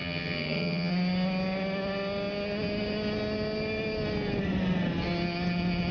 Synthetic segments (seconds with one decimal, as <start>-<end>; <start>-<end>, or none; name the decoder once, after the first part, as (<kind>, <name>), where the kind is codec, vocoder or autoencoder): 0.0-0.9 (vocoder, HiFi-GAN)